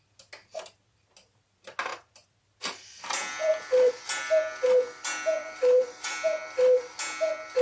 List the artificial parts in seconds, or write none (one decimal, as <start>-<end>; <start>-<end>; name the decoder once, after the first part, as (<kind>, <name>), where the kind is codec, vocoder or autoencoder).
5.4-6.1 (vocoder, BigVGAN v2)